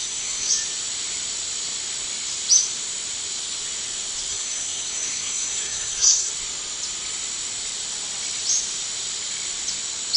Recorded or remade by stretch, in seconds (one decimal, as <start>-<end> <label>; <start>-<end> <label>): 0.0-0.5 remade; 0.5-4.3 recorded; 4.3-6.3 remade; 6.3-10.2 recorded